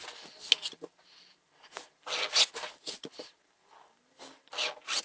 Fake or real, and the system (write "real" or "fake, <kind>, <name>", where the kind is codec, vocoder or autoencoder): real